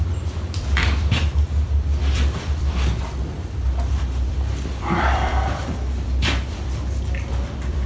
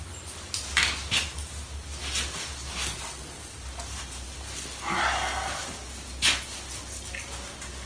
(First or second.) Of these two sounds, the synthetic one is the first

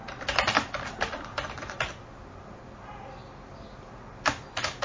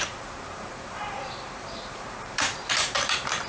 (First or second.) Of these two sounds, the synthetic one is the second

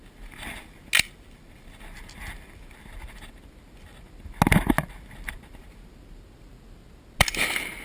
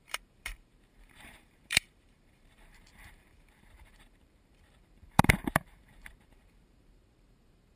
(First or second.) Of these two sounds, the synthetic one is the second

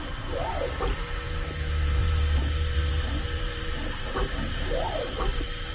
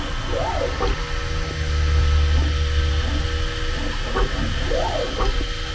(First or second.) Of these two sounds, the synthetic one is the first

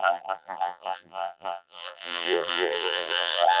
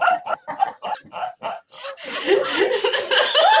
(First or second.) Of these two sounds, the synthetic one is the first